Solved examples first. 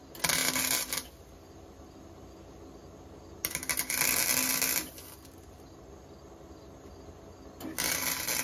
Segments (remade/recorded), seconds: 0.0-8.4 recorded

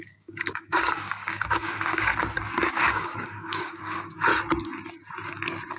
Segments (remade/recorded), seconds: 0.0-2.1 remade; 2.1-2.7 recorded; 2.7-4.3 remade; 4.3-5.8 recorded

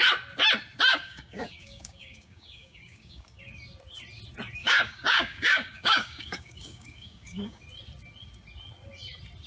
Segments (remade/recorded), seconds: 0.0-0.9 recorded; 0.9-3.4 remade; 3.4-4.6 recorded; 4.6-7.6 remade; 7.6-9.5 recorded

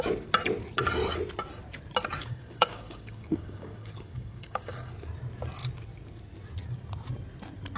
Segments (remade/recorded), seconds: 0.0-2.2 recorded; 2.2-4.9 remade; 4.9-7.8 recorded

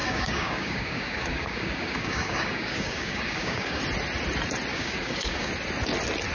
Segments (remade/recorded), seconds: 0.0-3.8 remade; 3.8-4.7 recorded; 4.7-5.5 remade; 5.5-6.3 recorded

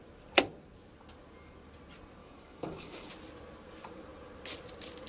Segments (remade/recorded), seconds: 0.0-2.2 recorded; 2.2-3.1 remade; 3.1-5.1 recorded